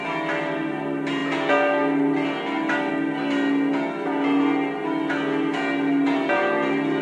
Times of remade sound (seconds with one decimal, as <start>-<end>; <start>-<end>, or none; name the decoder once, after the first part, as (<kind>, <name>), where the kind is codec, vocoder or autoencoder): none